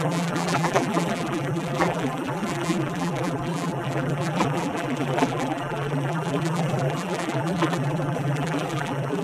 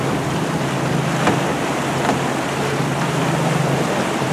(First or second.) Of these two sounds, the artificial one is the first